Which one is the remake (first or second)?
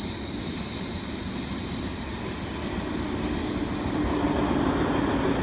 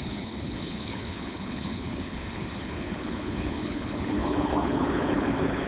second